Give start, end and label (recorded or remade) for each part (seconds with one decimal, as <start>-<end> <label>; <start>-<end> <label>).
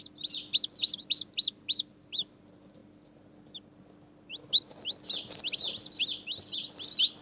0.0-7.2 recorded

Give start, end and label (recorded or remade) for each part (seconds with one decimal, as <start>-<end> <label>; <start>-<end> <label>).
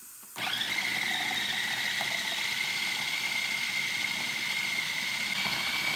0.0-6.0 recorded